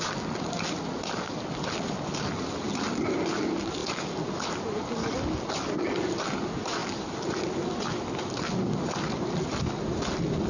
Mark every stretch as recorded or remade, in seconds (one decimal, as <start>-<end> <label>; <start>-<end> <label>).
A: 0.0-10.5 recorded